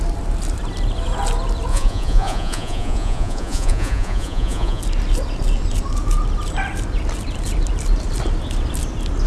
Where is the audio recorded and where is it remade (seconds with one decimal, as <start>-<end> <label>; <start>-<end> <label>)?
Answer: 0.0-1.7 recorded; 1.7-4.8 remade; 4.8-9.3 recorded